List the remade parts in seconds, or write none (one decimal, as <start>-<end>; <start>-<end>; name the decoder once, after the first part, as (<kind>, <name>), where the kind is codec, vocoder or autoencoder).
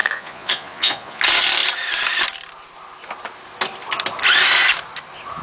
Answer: 0.0-1.2 (vocoder, Vocos)